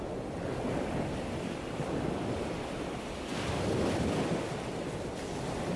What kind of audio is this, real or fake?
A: real